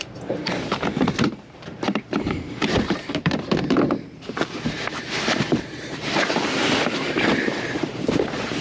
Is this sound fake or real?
fake